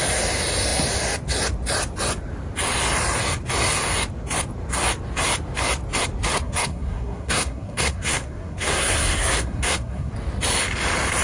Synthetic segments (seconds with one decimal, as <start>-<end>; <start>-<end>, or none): 6.3-10.1